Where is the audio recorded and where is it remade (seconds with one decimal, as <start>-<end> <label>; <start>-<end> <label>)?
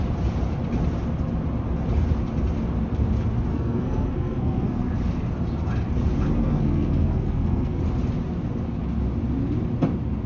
0.0-3.5 recorded; 3.5-4.9 remade; 4.9-6.4 recorded; 6.4-7.8 remade; 7.8-10.3 recorded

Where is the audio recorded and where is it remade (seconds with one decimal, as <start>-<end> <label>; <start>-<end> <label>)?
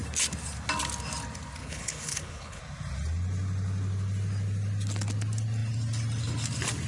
0.0-1.6 recorded; 1.6-2.6 remade; 2.6-6.9 recorded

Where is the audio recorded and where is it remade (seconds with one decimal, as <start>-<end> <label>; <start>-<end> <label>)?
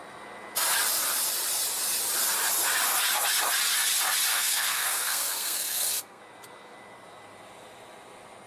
0.0-4.3 recorded; 4.3-6.2 remade; 6.2-8.5 recorded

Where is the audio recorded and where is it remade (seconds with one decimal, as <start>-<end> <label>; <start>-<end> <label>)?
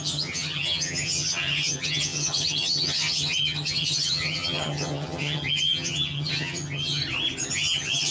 0.0-7.0 remade; 7.0-7.5 recorded; 7.5-8.1 remade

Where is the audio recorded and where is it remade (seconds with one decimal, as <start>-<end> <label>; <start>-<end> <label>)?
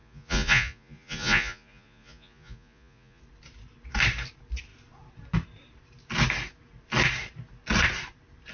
0.0-3.2 remade; 3.2-8.5 recorded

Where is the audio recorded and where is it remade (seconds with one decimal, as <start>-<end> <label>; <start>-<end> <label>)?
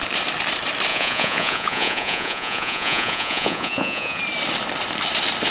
0.0-0.9 recorded; 0.9-4.2 remade; 4.2-5.5 recorded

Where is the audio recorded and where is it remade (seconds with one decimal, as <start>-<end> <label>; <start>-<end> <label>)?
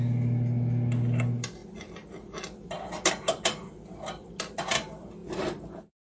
0.0-6.2 recorded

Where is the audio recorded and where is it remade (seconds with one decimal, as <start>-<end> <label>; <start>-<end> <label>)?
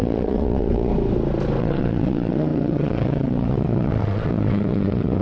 0.0-0.9 remade; 0.9-1.6 recorded; 1.6-5.2 remade